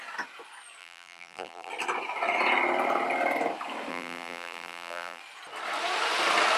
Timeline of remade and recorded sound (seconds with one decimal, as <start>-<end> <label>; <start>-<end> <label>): 0.0-0.8 recorded; 0.8-1.7 remade; 1.7-3.9 recorded; 3.9-5.2 remade; 5.2-6.6 recorded